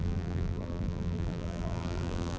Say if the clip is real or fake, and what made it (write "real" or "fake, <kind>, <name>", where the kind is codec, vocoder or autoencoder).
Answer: fake, vocoder, BigVGAN v2